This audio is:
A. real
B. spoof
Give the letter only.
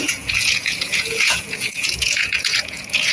B